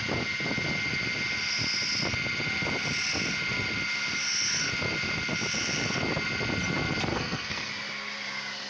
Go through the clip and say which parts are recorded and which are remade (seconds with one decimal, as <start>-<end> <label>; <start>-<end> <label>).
0.0-7.1 recorded; 7.1-7.7 remade; 7.7-8.7 recorded